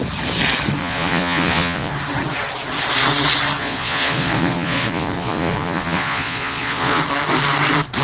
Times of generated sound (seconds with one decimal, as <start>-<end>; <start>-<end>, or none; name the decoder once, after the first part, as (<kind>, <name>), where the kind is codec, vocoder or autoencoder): 0.8-1.9 (vocoder, Vocos); 3.6-7.0